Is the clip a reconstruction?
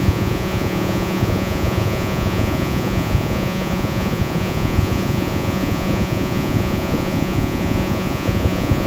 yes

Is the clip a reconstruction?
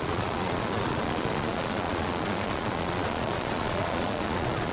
yes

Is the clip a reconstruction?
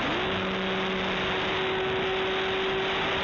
no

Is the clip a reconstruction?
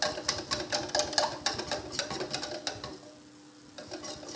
no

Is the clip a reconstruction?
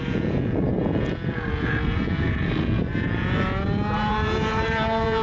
yes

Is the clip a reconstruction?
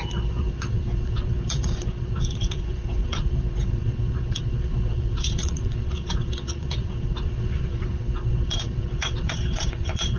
yes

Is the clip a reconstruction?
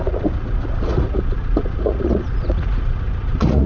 yes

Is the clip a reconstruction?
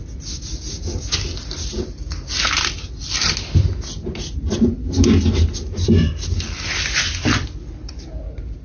no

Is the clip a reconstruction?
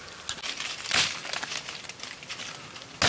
no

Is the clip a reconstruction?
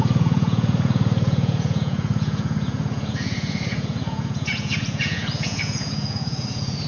yes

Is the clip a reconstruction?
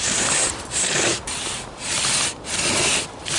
no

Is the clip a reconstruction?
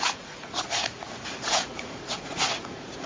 yes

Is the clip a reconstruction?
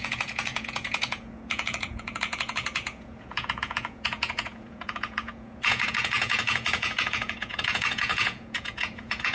yes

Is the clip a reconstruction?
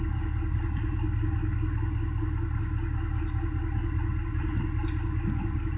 no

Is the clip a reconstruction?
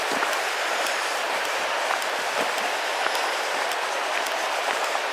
no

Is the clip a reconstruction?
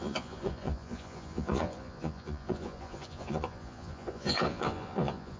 yes